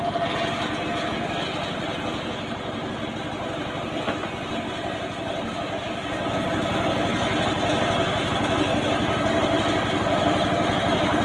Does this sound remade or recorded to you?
recorded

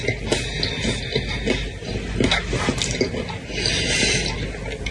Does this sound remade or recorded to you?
recorded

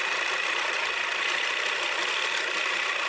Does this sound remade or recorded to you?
recorded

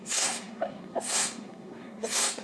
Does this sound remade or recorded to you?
remade